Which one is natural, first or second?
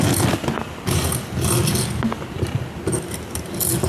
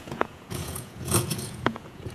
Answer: first